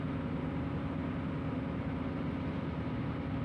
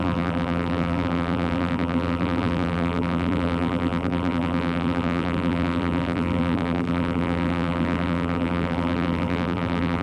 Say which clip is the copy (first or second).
second